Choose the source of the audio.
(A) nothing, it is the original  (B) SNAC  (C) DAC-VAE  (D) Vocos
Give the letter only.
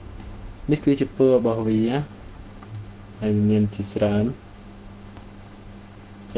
C